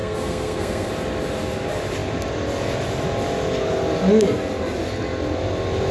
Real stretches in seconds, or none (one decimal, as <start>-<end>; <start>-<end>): 0.9-5.9